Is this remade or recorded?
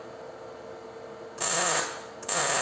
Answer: recorded